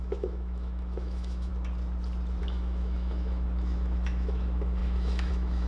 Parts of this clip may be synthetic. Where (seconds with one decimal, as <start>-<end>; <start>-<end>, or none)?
0.0-1.5; 2.4-5.7